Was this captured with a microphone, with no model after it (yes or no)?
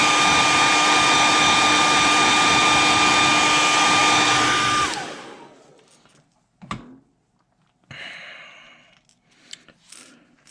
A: yes